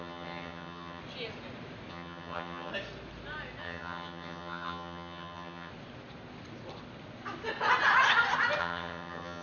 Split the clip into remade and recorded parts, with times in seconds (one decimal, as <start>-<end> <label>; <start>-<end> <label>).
0.0-1.0 remade; 1.0-1.9 recorded; 1.9-2.7 remade; 2.7-3.6 recorded; 3.6-5.7 remade; 5.7-8.6 recorded; 8.6-9.4 remade